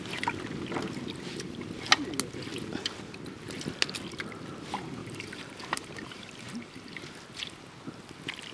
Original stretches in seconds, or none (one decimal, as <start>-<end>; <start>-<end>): 0.0-5.0; 7.0-8.5